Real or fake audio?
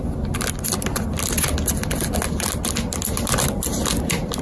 real